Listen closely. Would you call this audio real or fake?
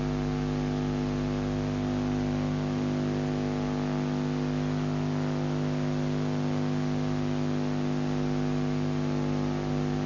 real